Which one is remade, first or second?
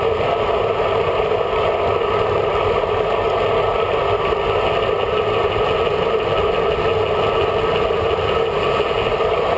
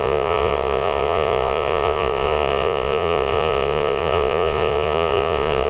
second